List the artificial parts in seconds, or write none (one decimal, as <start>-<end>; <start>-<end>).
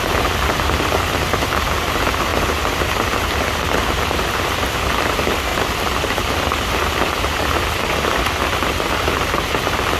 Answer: 0.0-8.4; 9.5-10.0